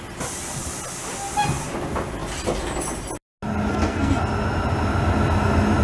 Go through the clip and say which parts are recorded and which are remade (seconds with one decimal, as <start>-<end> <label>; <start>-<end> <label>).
0.0-3.7 recorded; 3.7-4.2 remade; 4.2-5.8 recorded